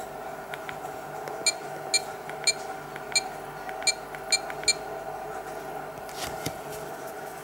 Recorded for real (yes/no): yes